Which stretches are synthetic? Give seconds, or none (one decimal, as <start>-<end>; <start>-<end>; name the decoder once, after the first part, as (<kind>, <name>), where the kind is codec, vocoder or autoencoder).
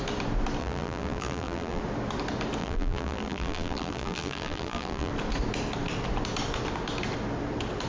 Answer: 0.6-1.8 (vocoder, BigVGAN v2); 2.6-5.1